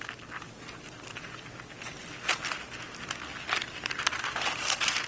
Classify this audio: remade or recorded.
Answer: recorded